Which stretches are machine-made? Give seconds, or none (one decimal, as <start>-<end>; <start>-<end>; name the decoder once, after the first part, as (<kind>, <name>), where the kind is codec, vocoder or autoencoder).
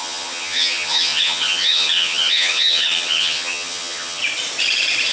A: 0.0-4.2 (vocoder, HiFi-GAN)